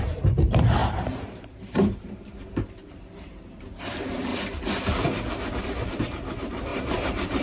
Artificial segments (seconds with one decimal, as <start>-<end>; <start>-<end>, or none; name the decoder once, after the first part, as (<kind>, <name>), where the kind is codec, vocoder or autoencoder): 0.0-4.3 (vocoder, BigVGAN v2); 5.6-7.4